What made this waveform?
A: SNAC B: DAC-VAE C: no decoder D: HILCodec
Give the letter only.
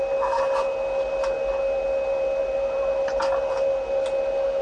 C